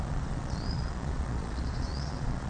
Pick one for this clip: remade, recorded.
remade